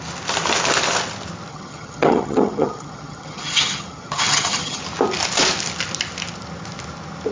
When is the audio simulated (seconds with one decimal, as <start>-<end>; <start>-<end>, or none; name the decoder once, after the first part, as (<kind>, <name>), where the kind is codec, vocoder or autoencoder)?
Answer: 1.5-4.8 (vocoder, HiFi-GAN)